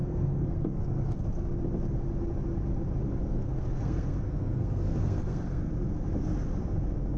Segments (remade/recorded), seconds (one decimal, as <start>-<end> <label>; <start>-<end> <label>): 0.0-1.2 remade; 1.2-3.2 recorded; 3.2-5.7 remade; 5.7-7.2 recorded